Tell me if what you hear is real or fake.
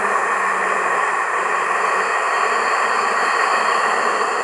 real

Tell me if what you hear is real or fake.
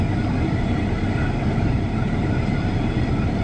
real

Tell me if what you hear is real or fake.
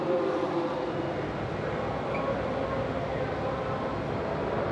real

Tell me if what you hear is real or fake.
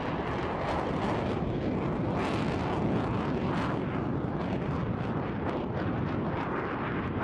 fake